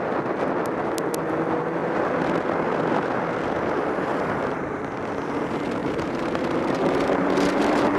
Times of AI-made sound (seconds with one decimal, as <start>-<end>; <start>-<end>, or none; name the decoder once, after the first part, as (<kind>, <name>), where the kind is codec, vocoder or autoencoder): 4.1-4.8 (vocoder, BigVGAN v2); 5.8-8.0